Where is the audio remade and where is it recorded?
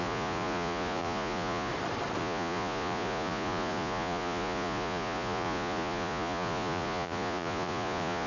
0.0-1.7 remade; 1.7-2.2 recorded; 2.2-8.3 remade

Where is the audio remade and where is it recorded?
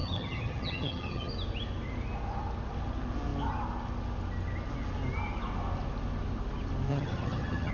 0.0-1.3 remade; 1.3-6.9 recorded; 6.9-7.7 remade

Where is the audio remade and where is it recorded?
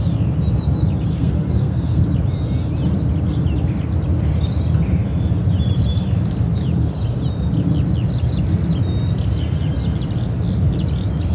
0.0-1.1 recorded; 1.1-2.0 remade; 2.0-11.3 recorded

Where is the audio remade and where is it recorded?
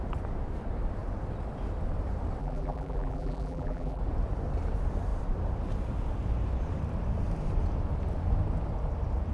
0.0-2.4 recorded; 2.4-4.0 remade; 4.0-9.3 recorded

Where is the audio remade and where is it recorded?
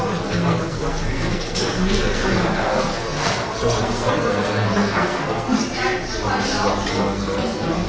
0.0-5.6 remade; 5.6-6.9 recorded; 6.9-7.9 remade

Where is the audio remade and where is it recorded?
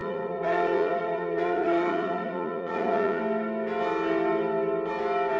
0.0-3.2 remade; 3.2-5.4 recorded